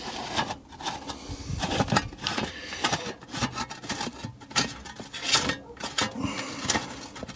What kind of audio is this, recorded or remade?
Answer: recorded